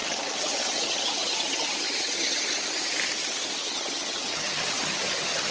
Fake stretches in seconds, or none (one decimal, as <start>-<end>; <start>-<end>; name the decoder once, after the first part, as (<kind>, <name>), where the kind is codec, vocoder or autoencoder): 0.0-2.4 (vocoder, HiFi-GAN); 3.6-5.5